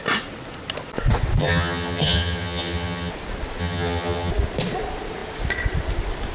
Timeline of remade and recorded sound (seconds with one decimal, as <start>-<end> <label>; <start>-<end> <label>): 0.0-1.4 recorded; 1.4-3.1 remade; 3.1-3.6 recorded; 3.6-4.3 remade; 4.3-6.3 recorded